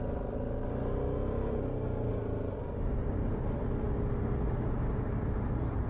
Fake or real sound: real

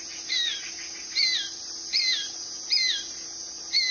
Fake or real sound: real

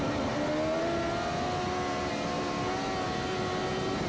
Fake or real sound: real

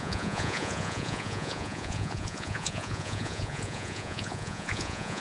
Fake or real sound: fake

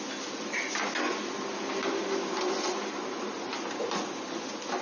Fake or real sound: real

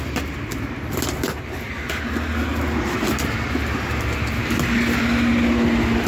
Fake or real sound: real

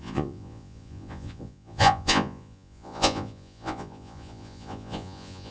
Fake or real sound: fake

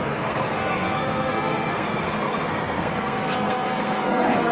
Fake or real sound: fake